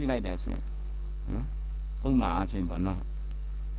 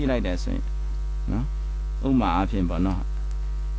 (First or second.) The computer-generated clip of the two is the first